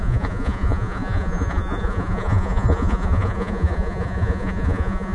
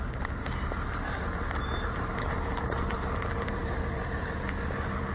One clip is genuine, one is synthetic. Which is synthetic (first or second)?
first